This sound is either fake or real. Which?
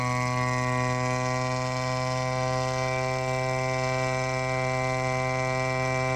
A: real